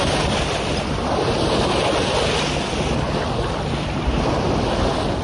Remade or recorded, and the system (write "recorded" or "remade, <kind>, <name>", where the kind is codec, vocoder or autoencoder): recorded